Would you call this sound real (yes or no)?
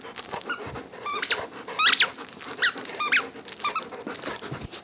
yes